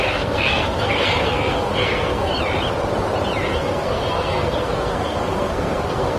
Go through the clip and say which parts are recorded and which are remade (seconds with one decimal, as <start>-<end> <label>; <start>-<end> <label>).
0.0-2.3 remade; 2.3-3.5 recorded; 3.5-6.2 remade